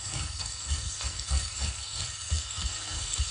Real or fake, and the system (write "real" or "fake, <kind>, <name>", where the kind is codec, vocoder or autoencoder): fake, codec, SNAC